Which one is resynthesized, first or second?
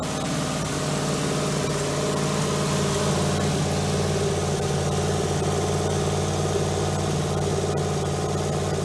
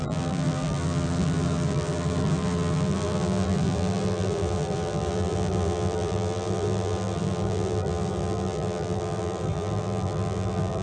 second